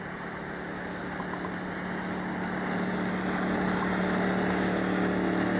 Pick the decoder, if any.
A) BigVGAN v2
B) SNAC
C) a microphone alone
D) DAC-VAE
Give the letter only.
C